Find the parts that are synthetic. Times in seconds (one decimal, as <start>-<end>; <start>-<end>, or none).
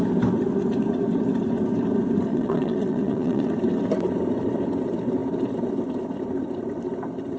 2.3-3.5